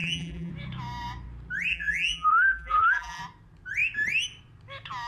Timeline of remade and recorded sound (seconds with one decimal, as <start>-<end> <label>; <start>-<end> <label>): 0.0-0.5 remade; 0.5-1.7 recorded; 1.7-3.2 remade; 3.2-5.1 recorded